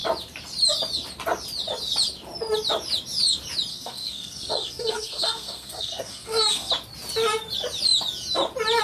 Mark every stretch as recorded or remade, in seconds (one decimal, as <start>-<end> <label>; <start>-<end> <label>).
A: 0.0-3.7 recorded; 3.7-6.7 remade; 6.7-8.8 recorded